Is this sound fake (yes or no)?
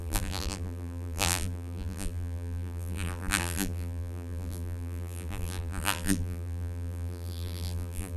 yes